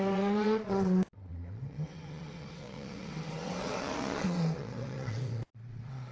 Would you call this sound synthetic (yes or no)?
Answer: yes